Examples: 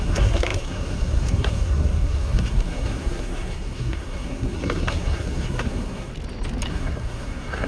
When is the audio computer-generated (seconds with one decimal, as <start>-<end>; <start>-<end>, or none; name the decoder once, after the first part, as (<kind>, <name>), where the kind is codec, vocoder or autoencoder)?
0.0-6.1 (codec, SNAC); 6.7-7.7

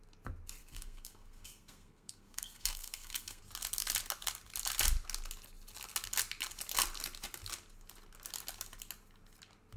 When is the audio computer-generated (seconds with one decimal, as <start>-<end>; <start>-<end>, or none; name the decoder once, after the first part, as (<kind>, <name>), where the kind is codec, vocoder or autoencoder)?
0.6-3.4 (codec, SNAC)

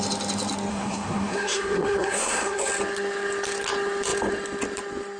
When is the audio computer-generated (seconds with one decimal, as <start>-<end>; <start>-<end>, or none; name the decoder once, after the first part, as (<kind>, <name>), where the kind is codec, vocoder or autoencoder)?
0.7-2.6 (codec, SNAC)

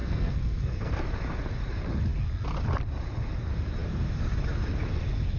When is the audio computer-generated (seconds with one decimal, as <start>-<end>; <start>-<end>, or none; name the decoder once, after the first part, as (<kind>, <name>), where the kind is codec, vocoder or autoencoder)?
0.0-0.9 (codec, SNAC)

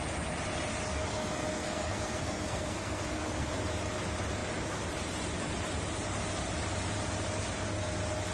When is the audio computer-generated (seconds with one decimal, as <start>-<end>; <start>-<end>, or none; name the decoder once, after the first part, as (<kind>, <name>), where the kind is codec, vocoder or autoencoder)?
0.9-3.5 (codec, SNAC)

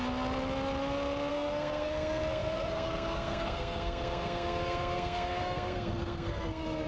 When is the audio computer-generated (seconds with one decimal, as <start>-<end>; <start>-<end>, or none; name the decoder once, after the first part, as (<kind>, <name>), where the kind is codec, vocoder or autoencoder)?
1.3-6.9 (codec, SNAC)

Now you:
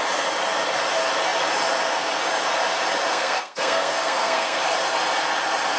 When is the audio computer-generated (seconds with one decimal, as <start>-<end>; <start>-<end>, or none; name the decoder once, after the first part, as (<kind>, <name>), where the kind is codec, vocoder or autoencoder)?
3.1-4.6 (codec, SNAC)